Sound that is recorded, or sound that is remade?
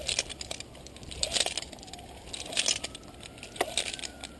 recorded